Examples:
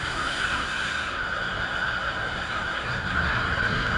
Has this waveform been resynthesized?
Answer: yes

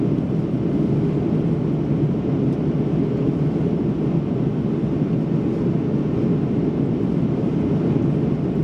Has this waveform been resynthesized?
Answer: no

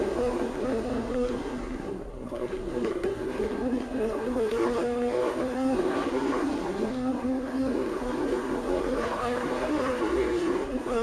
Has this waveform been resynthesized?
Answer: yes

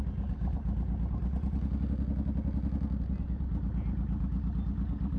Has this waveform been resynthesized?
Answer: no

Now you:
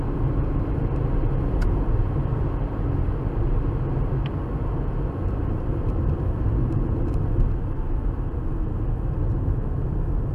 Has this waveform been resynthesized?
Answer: no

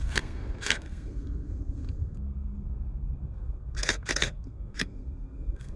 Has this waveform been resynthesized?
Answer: yes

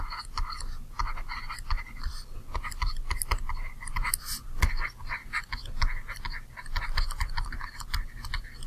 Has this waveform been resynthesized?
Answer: no